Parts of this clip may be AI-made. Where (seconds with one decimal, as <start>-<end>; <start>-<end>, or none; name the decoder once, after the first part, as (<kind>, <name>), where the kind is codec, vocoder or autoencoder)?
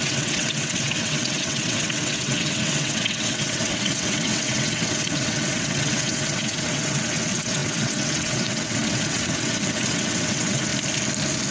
0.0-10.7 (vocoder, WaveNeXt)